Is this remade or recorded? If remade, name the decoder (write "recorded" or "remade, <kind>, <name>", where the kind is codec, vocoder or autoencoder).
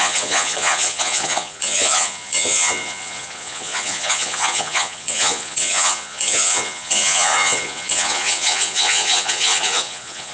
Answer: remade, vocoder, Vocos